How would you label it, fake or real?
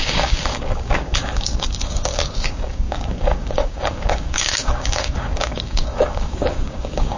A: fake